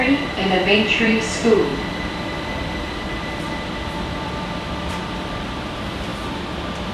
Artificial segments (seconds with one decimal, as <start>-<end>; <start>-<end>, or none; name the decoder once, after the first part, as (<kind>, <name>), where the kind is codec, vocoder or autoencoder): 0.0-6.1 (vocoder, BigVGAN v2)